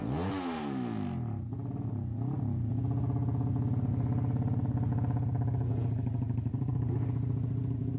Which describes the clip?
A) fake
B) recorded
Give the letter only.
B